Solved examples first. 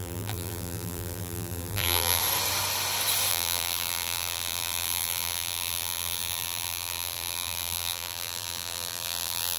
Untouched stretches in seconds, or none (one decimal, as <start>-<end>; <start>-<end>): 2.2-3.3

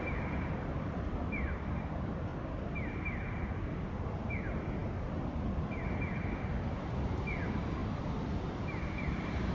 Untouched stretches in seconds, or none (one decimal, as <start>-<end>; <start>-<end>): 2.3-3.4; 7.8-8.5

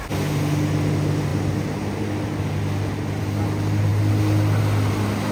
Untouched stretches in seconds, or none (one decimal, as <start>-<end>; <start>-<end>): 0.0-5.3

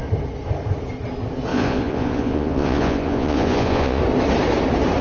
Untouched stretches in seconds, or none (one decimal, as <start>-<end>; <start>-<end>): 0.0-1.5; 4.0-5.0